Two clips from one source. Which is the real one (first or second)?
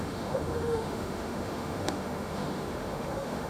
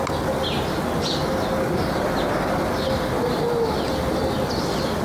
second